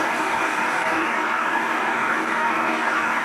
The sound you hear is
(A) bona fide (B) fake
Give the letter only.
B